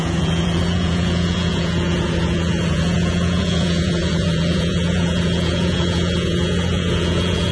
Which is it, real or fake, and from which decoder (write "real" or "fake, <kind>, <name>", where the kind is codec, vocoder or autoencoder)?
fake, vocoder, Vocos